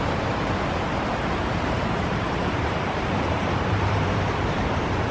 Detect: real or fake fake